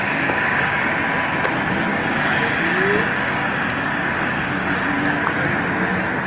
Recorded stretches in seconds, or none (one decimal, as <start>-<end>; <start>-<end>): 0.9-1.9; 4.9-6.3